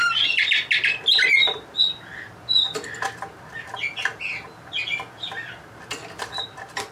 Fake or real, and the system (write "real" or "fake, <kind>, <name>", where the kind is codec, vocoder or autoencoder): real